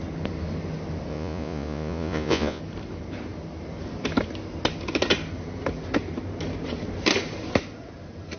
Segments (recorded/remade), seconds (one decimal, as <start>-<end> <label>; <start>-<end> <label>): 0.0-1.1 recorded; 1.1-2.6 remade; 2.6-8.4 recorded

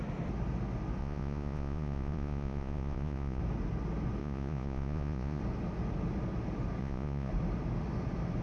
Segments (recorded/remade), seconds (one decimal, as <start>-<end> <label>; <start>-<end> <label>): 0.0-1.0 recorded; 1.0-3.4 remade; 3.4-4.2 recorded; 4.2-5.4 remade; 5.4-6.8 recorded; 6.8-7.3 remade; 7.3-8.4 recorded